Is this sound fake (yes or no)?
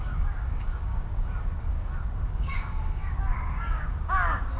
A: yes